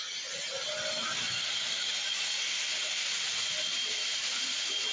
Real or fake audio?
real